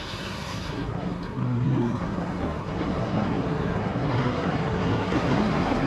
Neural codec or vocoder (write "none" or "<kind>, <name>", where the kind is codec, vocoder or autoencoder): codec, SNAC